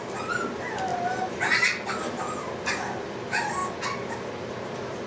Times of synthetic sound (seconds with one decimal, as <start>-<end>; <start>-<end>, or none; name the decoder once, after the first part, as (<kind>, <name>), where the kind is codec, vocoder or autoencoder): none